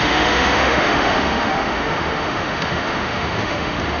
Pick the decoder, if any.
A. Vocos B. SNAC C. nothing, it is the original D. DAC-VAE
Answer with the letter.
D